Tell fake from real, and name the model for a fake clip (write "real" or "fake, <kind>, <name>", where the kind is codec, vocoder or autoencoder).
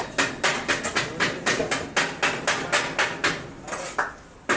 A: real